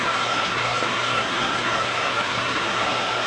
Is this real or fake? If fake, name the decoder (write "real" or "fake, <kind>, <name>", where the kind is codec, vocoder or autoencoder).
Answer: fake, codec, SNAC